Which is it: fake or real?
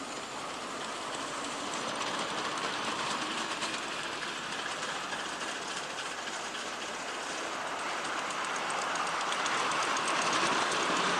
fake